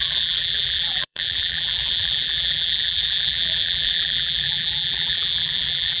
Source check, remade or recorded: remade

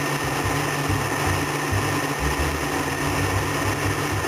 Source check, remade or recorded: recorded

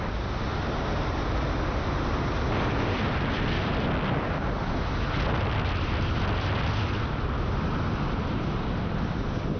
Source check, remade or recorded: recorded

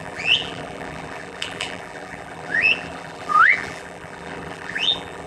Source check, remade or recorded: remade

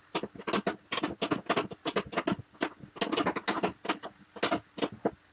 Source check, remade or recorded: recorded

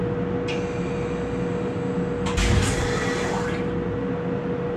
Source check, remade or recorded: recorded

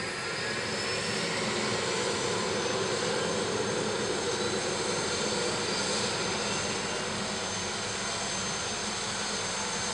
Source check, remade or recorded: recorded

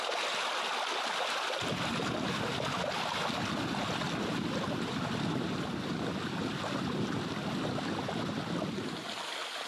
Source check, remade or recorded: recorded